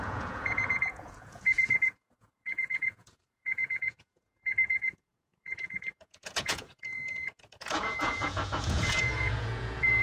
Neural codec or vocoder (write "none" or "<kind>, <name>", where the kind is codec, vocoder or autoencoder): vocoder, Vocos